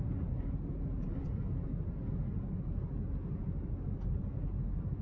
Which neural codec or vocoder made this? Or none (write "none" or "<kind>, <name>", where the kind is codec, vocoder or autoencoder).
none